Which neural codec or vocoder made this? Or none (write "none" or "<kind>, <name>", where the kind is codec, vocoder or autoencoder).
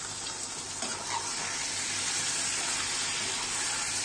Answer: none